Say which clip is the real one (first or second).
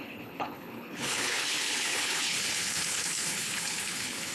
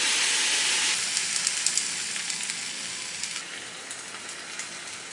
second